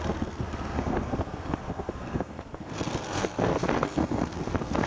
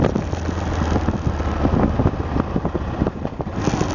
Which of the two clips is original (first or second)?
second